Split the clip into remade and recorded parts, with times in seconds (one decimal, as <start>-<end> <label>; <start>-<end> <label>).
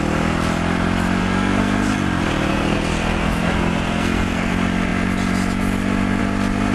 0.0-1.2 recorded; 1.2-1.9 remade; 1.9-2.5 recorded; 2.5-4.5 remade; 4.5-6.7 recorded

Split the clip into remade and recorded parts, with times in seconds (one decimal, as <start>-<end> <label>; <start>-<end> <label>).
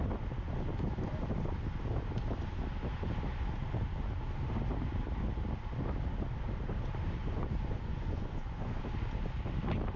0.0-7.2 recorded; 7.2-8.8 remade; 8.8-10.0 recorded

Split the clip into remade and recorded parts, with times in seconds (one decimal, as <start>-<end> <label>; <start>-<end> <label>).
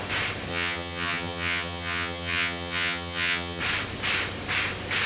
0.0-0.5 recorded; 0.5-3.6 remade; 3.6-5.1 recorded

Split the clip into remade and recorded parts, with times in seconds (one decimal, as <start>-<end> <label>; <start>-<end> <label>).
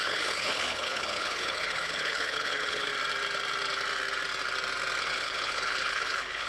0.0-2.9 remade; 2.9-5.0 recorded; 5.0-6.5 remade